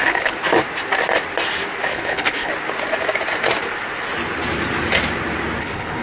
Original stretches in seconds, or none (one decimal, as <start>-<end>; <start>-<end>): 0.4-1.9; 2.5-5.6